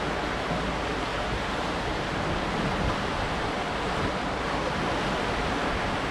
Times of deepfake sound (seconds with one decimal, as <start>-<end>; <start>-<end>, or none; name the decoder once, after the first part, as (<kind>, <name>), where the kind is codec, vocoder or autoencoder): 1.1-4.8 (vocoder, BigVGAN v2)